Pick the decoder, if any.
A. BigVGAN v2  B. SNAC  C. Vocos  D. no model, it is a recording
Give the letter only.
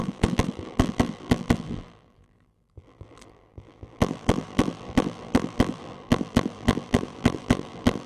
A